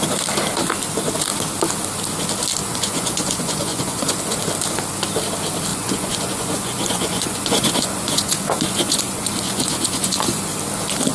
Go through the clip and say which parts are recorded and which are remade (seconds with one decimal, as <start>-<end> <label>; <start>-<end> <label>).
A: 0.0-2.6 recorded; 2.6-4.4 remade; 4.4-5.7 recorded; 5.7-10.4 remade; 10.4-11.1 recorded